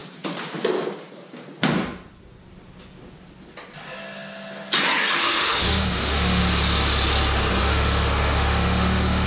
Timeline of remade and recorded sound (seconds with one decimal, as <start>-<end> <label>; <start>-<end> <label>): 0.0-5.2 recorded; 5.2-6.4 remade; 6.4-7.6 recorded; 7.6-9.3 remade